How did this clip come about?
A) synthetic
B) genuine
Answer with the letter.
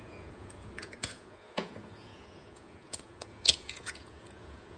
A